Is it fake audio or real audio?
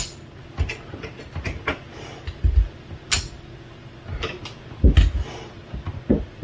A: real